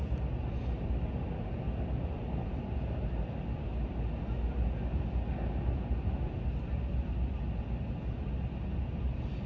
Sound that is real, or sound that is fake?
real